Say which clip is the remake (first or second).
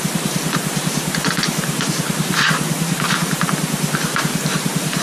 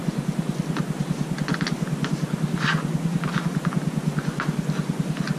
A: first